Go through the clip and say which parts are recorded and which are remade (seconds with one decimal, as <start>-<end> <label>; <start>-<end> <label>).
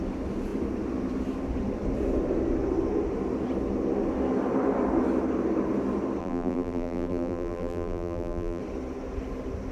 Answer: 0.0-6.2 recorded; 6.2-8.6 remade; 8.6-9.7 recorded